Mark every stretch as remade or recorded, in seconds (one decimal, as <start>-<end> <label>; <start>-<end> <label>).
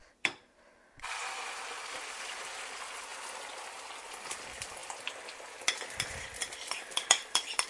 0.0-3.1 remade; 3.1-4.0 recorded; 4.0-4.8 remade; 4.8-6.1 recorded; 6.1-7.7 remade